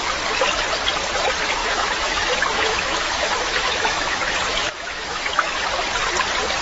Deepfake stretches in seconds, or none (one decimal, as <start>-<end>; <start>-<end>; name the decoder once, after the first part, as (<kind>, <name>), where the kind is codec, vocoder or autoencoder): 1.6-5.6 (autoencoder, DAC-VAE)